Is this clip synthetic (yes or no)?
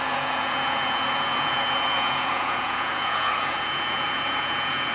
yes